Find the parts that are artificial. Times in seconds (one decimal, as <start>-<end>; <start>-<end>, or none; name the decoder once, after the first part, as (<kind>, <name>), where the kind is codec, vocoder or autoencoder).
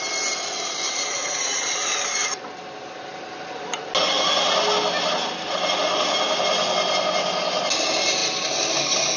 1.1-1.6 (vocoder, Vocos)